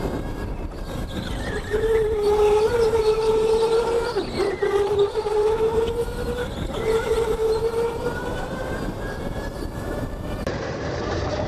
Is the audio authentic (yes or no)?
no